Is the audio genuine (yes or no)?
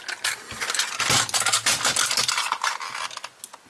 yes